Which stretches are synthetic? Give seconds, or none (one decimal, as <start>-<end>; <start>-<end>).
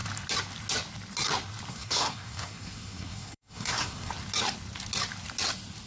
1.7-4.1